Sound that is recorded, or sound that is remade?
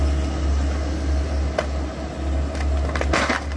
recorded